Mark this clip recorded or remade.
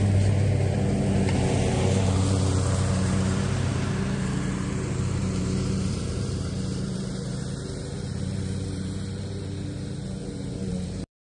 remade